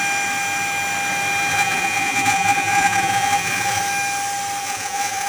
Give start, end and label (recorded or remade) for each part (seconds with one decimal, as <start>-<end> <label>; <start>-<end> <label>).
0.0-1.5 recorded; 1.5-3.8 remade; 3.8-4.6 recorded; 4.6-5.3 remade